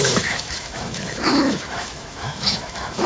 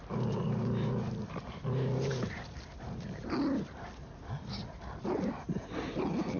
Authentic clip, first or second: second